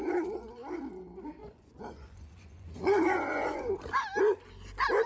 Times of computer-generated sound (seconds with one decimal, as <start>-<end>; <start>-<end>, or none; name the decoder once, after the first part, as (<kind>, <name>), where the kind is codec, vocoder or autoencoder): 0.0-0.5 (vocoder, Vocos); 1.4-3.7